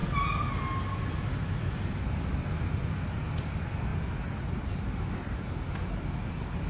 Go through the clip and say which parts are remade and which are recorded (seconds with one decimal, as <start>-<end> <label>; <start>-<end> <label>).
0.0-6.7 recorded

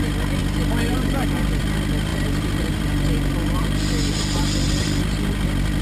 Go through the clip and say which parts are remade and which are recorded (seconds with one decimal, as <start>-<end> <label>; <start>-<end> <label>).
0.0-5.8 recorded

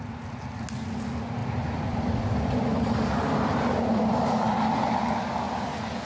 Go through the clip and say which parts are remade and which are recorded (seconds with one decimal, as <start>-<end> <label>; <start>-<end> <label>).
0.0-1.4 recorded; 1.4-3.7 remade; 3.7-6.0 recorded

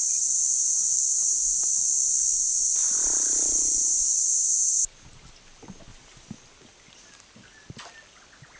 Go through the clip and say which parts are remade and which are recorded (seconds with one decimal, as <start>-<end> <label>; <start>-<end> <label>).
0.0-2.8 recorded; 2.8-4.6 remade; 4.6-5.9 recorded; 5.9-6.4 remade; 6.4-8.6 recorded

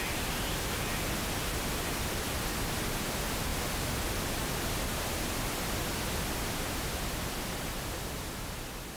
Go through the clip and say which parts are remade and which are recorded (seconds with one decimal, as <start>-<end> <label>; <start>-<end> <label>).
0.0-9.0 recorded

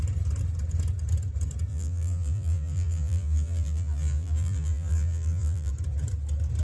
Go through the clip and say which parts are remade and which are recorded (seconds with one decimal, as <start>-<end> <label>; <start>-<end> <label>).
0.0-1.7 recorded; 1.7-5.7 remade; 5.7-6.6 recorded